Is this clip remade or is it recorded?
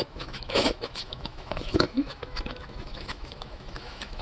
remade